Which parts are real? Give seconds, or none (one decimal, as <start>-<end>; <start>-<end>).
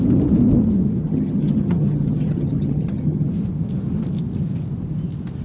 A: 0.0-1.0; 3.3-5.4